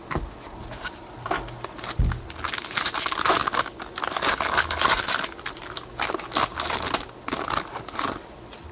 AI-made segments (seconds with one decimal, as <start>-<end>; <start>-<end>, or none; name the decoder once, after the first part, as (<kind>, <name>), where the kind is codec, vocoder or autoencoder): none

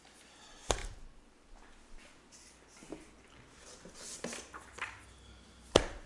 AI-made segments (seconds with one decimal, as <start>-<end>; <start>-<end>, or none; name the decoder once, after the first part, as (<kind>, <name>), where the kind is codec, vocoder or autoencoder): 0.8-1.6 (vocoder, BigVGAN v2)